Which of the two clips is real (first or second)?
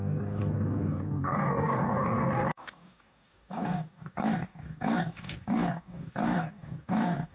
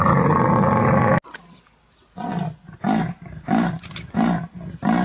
second